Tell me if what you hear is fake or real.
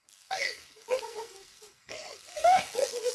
fake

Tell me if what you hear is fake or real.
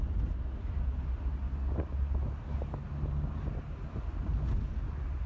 real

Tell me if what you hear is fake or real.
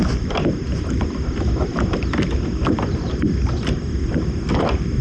real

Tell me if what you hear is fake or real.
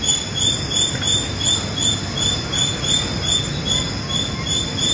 real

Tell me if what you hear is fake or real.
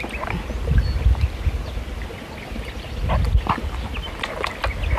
real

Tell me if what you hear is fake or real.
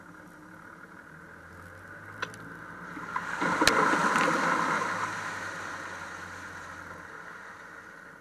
real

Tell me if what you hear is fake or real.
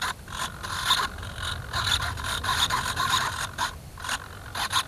real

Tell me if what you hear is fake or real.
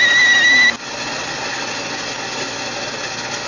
real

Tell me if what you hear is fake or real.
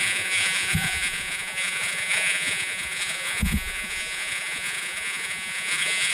fake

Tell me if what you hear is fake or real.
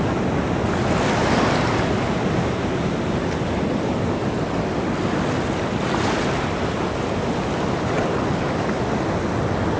real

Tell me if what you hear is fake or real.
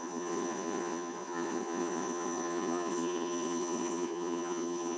fake